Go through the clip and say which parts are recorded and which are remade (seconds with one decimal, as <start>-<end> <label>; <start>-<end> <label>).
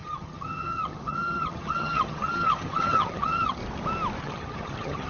0.0-3.6 remade; 3.6-4.2 recorded; 4.2-5.1 remade